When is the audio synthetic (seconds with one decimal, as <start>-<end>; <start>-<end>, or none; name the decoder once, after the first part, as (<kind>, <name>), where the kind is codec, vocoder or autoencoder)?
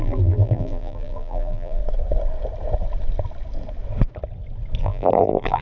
0.0-1.8 (vocoder, BigVGAN v2); 4.8-5.6